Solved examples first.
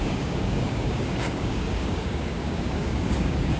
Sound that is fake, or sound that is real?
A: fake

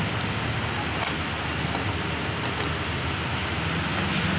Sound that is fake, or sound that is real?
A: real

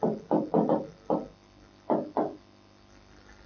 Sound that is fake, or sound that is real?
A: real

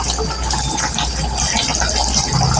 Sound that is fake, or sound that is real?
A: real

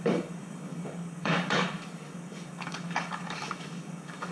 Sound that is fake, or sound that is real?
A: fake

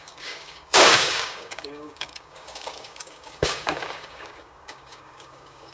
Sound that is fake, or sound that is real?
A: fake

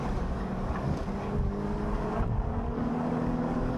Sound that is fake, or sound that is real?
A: fake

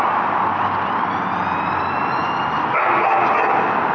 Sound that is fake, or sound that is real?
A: real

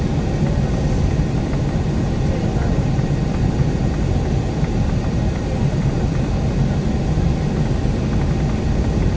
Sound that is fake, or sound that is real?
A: real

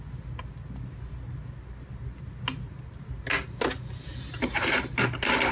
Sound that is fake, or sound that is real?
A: real